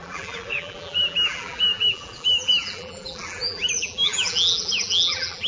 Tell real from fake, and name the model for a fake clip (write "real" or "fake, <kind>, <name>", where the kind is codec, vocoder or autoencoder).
fake, vocoder, BigVGAN v2